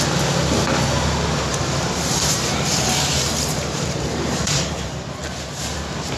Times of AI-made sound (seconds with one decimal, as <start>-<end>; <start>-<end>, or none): 1.5-5.2

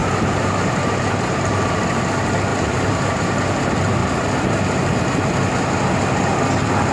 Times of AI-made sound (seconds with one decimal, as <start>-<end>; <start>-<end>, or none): 0.0-1.6; 2.5-3.4; 4.0-4.6

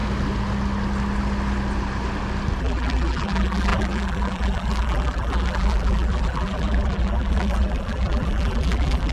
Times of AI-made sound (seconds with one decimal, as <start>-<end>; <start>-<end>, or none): 2.6-9.1